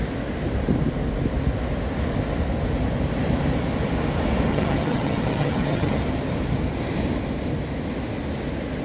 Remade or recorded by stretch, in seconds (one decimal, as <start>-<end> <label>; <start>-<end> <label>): 0.0-4.5 recorded; 4.5-6.0 remade; 6.0-8.8 recorded